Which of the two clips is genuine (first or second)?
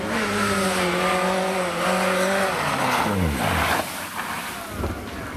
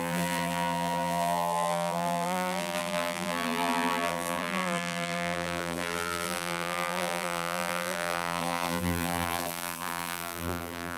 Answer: first